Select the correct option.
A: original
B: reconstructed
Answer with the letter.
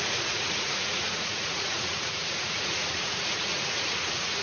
B